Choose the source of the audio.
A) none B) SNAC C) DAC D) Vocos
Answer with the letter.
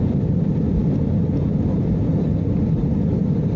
A